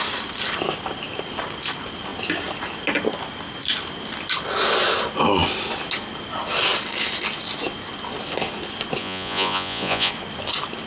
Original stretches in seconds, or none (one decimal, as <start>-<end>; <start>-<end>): 0.0-9.0; 10.1-10.9